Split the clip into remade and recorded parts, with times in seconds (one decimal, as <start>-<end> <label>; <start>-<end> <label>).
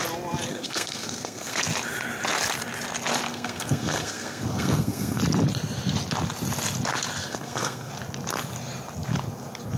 0.0-0.5 recorded; 0.5-1.6 remade; 1.6-3.3 recorded; 3.3-5.2 remade; 5.2-7.2 recorded; 7.2-7.9 remade; 7.9-9.8 recorded